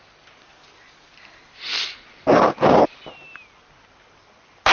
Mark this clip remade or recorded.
recorded